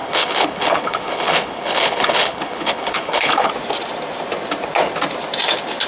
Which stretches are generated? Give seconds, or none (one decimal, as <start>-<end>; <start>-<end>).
0.0-3.5